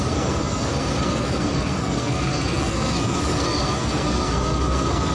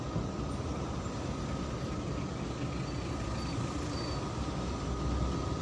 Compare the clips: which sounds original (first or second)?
second